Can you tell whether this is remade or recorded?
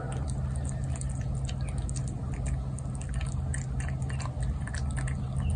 recorded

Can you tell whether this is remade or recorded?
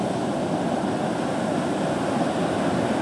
recorded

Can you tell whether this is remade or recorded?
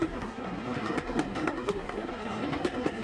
remade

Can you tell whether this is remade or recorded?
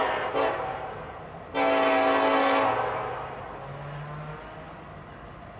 recorded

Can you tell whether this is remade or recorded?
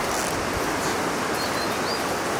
recorded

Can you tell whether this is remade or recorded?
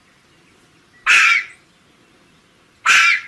recorded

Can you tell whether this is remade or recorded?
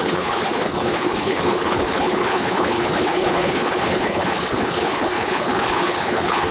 remade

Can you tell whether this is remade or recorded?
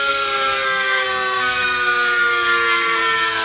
remade